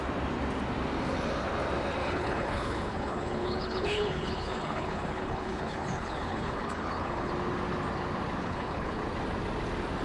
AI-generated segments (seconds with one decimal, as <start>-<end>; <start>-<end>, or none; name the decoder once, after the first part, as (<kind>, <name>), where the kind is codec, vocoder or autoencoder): 2.0-7.3 (codec, HILCodec); 8.4-9.0